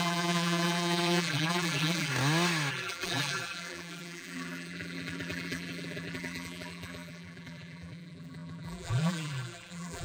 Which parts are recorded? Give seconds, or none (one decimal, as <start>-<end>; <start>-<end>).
2.1-2.7